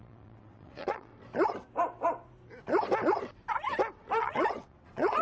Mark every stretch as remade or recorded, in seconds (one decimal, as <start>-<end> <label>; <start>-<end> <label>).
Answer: 0.0-1.1 remade; 1.1-4.2 recorded; 4.2-5.2 remade

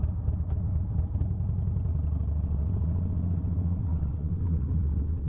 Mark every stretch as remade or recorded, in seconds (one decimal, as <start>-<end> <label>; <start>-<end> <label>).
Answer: 0.0-1.9 recorded; 1.9-5.3 remade

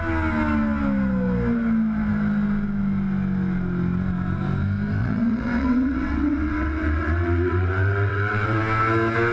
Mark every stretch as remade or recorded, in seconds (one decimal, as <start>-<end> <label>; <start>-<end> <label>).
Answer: 0.0-5.0 recorded; 5.0-8.6 remade; 8.6-9.3 recorded

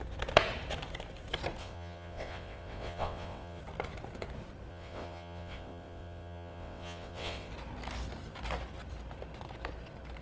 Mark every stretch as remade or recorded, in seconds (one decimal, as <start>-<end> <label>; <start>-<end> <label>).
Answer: 0.0-1.6 recorded; 1.6-3.6 remade; 3.6-4.7 recorded; 4.7-7.5 remade; 7.5-10.2 recorded

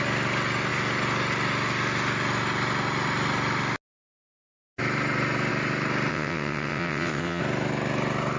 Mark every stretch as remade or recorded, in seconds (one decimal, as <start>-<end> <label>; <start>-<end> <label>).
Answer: 0.0-6.1 recorded; 6.1-7.4 remade; 7.4-8.4 recorded

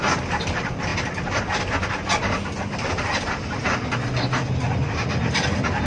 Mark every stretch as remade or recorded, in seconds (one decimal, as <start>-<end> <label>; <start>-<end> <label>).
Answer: 0.0-5.9 recorded

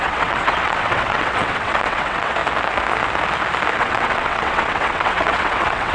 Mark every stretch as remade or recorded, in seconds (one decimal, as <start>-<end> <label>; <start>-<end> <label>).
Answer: 0.0-2.4 remade; 2.4-3.8 recorded; 3.8-5.9 remade

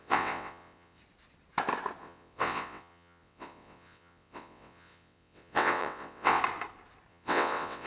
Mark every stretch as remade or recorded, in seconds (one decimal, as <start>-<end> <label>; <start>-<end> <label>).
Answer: 0.0-1.0 remade; 1.0-2.0 recorded; 2.0-6.4 remade; 6.4-7.1 recorded; 7.1-7.9 remade